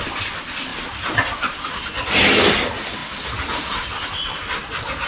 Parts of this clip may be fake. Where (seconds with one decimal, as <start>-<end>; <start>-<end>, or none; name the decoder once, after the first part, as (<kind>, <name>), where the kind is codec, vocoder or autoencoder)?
none